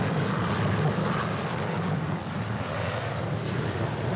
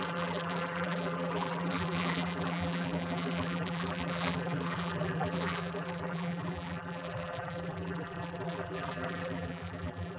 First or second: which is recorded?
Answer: first